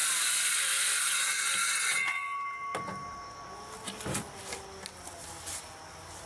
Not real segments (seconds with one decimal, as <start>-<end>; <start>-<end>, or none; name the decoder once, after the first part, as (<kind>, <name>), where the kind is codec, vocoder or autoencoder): none